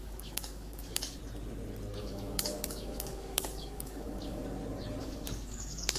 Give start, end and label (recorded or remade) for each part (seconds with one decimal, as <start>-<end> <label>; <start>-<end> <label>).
0.0-1.2 remade; 1.2-2.0 recorded; 2.0-4.4 remade; 4.4-5.0 recorded; 5.0-6.0 remade